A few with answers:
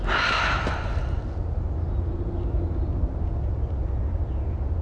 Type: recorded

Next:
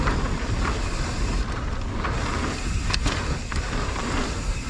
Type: recorded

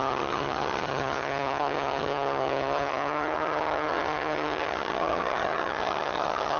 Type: remade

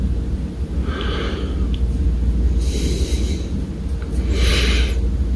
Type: recorded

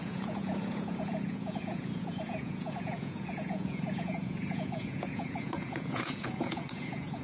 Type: remade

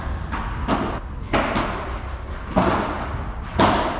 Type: recorded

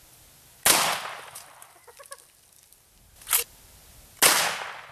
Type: recorded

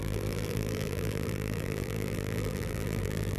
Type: remade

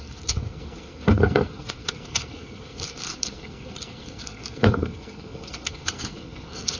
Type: remade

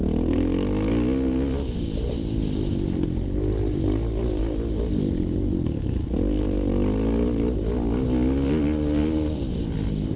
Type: recorded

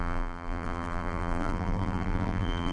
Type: remade